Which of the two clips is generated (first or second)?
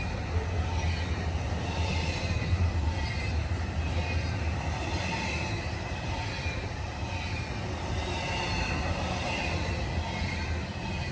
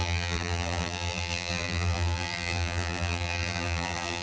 second